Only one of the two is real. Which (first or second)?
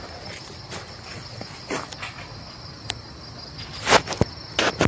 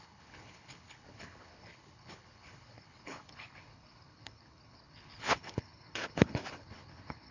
first